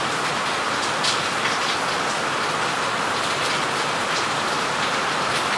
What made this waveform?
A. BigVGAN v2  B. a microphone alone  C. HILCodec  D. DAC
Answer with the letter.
B